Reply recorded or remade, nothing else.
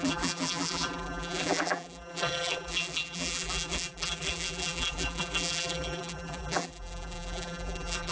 remade